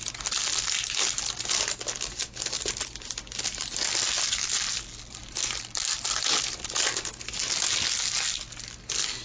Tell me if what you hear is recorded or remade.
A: recorded